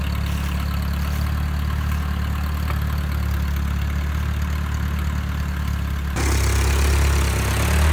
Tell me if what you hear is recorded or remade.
recorded